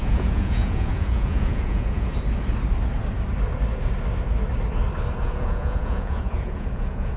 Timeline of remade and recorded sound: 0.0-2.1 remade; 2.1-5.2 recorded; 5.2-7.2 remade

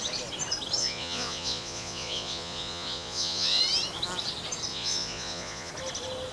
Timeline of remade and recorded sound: 0.0-0.8 recorded; 0.8-3.6 remade; 3.6-4.7 recorded; 4.7-5.7 remade; 5.7-6.3 recorded